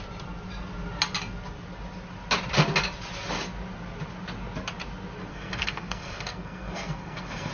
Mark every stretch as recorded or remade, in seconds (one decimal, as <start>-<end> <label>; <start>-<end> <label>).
0.0-5.3 recorded; 5.3-7.5 remade